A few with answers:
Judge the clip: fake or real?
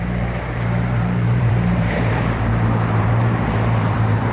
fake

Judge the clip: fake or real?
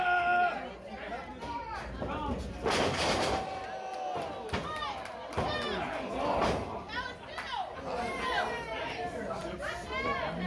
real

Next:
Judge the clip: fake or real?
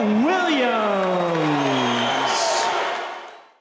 real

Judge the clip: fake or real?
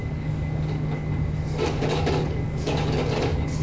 fake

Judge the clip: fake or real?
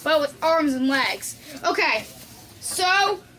real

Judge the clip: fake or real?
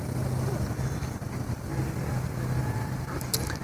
real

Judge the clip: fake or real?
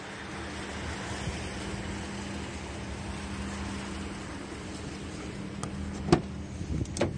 real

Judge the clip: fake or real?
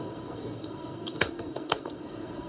fake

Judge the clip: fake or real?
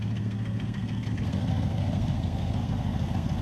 fake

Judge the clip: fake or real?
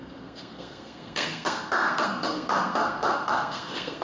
fake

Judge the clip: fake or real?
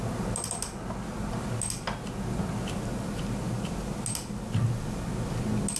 real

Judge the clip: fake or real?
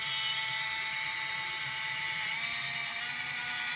fake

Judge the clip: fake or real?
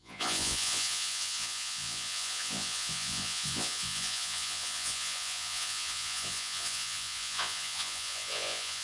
fake